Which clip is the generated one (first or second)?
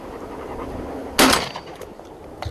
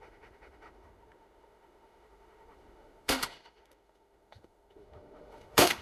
second